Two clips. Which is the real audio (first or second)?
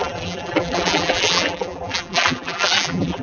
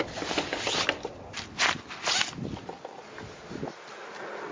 second